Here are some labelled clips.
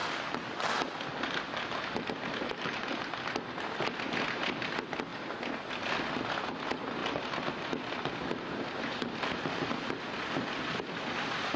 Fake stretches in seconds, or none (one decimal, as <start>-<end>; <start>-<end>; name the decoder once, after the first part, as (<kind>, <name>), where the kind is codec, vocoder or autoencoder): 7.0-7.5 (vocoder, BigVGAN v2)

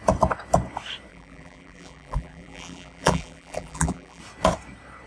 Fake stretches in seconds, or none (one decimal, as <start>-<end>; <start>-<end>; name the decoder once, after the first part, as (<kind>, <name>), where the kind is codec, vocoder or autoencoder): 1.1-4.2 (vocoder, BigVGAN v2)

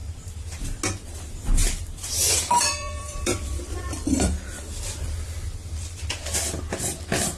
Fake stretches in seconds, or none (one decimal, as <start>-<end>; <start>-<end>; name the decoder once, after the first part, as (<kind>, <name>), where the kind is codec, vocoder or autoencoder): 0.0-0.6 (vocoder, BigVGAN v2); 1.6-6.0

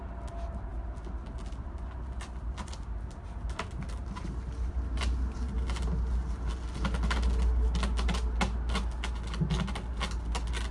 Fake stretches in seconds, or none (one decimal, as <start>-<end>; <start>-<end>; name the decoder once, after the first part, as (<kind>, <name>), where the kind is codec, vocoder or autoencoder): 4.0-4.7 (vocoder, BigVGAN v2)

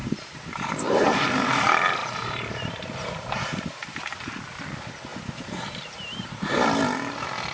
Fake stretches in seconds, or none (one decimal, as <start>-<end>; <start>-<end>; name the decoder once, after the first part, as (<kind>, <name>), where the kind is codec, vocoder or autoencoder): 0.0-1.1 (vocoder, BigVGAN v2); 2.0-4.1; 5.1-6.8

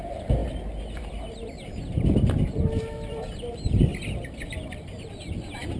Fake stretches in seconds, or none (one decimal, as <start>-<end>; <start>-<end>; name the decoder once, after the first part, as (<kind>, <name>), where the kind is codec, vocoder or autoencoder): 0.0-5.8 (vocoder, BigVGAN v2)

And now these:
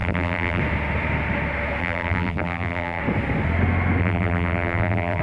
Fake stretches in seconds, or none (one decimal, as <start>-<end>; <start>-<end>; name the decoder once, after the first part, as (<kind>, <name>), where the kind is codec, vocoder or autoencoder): 0.0-0.6 (vocoder, BigVGAN v2); 1.8-3.0; 4.0-5.2

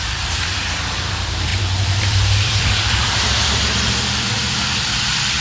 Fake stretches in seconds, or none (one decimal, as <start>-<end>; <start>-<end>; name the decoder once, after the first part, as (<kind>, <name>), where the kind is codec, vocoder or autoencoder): 0.0-5.4 (vocoder, BigVGAN v2)